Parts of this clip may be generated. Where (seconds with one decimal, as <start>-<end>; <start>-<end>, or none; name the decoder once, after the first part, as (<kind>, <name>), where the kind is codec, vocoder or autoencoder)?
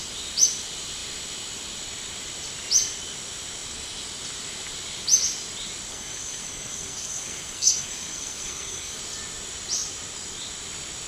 5.9-9.0 (codec, SNAC)